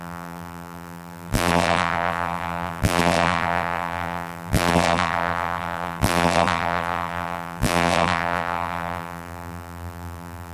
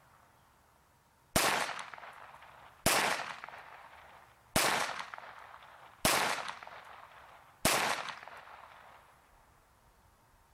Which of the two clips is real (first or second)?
second